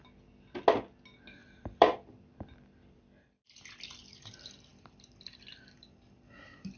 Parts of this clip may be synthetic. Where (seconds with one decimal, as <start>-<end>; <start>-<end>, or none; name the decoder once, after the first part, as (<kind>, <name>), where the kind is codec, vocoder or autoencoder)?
1.4-3.5 (vocoder, BigVGAN v2); 4.7-6.8